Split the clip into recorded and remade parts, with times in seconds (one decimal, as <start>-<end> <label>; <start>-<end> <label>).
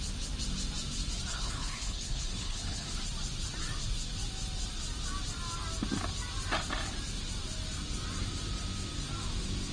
0.0-1.3 recorded; 1.3-3.0 remade; 3.0-9.7 recorded